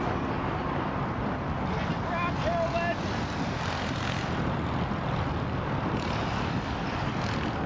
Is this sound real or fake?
real